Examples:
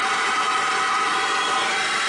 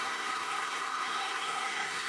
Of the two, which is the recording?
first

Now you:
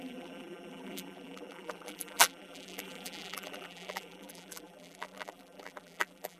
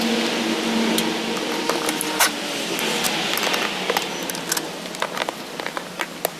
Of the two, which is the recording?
second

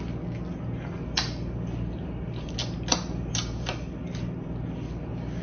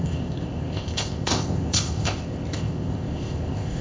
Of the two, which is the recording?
first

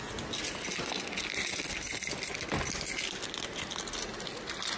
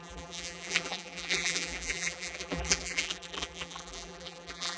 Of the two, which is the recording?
first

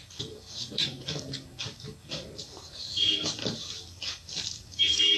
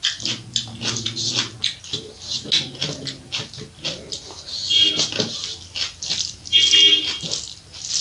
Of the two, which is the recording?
second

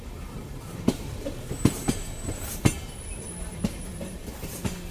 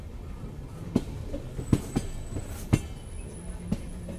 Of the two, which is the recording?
second